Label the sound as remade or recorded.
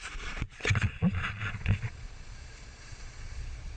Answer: remade